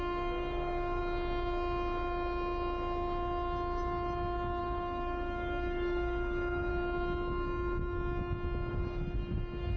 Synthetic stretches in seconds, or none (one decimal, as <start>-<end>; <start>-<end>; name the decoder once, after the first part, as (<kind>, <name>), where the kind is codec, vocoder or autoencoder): 0.0-1.0 (codec, DAC); 4.6-6.7; 8.7-9.8